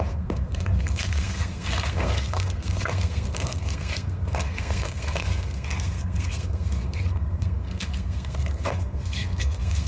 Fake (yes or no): yes